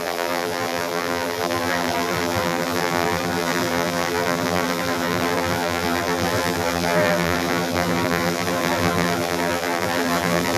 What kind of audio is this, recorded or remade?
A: remade